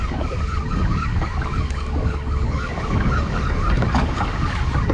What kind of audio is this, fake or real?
fake